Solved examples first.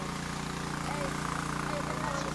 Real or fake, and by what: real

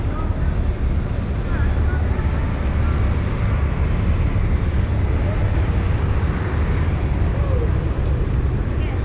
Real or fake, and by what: real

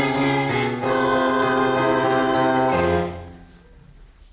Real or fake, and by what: real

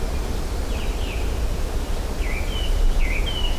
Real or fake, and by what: real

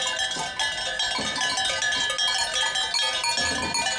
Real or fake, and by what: real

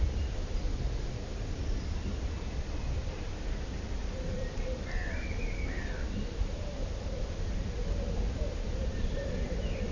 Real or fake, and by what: fake, vocoder, BigVGAN v2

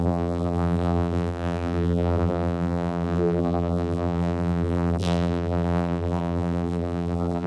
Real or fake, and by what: fake, vocoder, BigVGAN v2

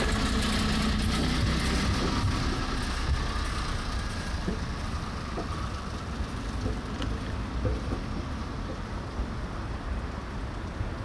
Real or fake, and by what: real